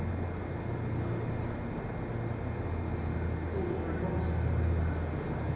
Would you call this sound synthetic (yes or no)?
no